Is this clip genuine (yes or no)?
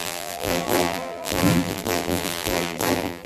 no